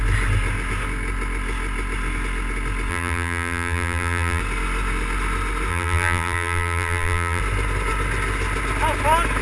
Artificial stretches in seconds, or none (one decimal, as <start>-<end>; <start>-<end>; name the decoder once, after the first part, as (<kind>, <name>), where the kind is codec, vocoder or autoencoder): 2.9-4.4 (vocoder, BigVGAN v2); 5.7-7.4